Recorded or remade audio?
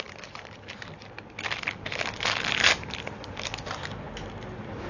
recorded